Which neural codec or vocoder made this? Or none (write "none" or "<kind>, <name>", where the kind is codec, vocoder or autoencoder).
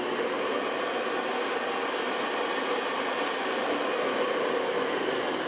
none